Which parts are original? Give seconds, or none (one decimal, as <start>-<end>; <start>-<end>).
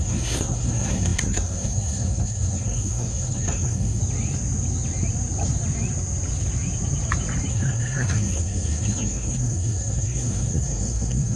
4.0-7.5